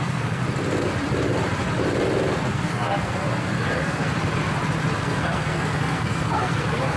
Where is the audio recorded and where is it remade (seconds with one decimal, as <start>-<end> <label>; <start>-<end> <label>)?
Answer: 0.0-0.4 remade; 0.4-2.4 recorded; 2.4-4.1 remade; 4.1-5.0 recorded; 5.0-7.0 remade